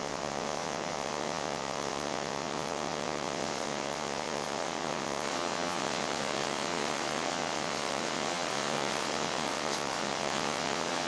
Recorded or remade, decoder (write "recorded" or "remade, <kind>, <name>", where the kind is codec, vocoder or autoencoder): remade, vocoder, WaveNeXt